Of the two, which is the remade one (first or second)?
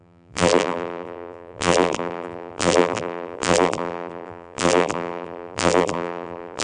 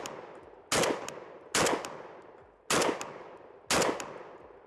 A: first